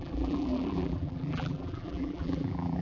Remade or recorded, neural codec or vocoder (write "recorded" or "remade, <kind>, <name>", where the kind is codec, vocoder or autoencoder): remade, vocoder, BigVGAN v2